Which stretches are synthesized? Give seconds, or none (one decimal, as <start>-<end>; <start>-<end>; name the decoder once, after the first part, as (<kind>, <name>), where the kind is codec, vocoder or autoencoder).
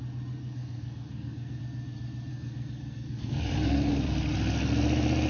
0.4-1.6 (codec, SNAC); 2.3-3.9